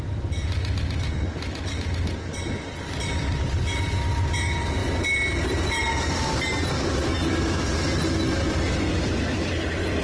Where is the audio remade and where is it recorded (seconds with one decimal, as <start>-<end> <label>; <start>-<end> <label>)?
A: 0.0-10.0 recorded